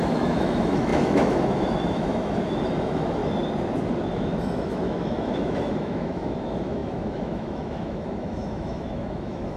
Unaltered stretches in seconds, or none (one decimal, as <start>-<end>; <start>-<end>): 3.2-4.1